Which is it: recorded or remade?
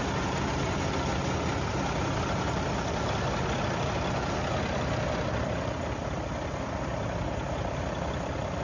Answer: recorded